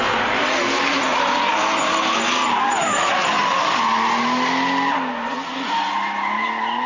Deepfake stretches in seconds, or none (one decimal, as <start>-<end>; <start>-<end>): none